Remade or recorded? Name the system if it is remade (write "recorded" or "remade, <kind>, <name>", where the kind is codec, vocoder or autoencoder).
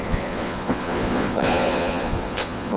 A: remade, vocoder, Vocos